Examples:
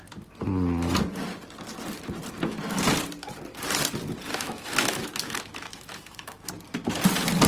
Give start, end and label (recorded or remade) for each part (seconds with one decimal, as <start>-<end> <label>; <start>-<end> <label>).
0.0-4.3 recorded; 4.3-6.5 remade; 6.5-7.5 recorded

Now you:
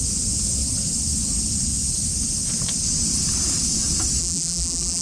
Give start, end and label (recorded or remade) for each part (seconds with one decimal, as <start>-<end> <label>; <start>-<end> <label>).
0.0-4.2 recorded; 4.2-5.0 remade

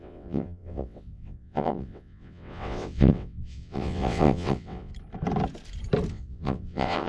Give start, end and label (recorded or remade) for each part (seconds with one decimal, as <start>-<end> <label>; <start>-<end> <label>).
0.0-4.9 remade; 4.9-6.1 recorded; 6.1-7.1 remade

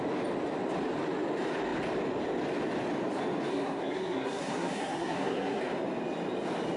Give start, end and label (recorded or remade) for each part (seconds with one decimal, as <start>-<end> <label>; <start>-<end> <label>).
0.0-3.5 recorded; 3.5-5.6 remade; 5.6-6.8 recorded